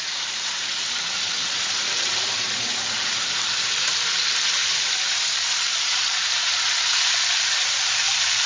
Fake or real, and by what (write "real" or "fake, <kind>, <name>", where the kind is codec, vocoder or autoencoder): fake, vocoder, BigVGAN v2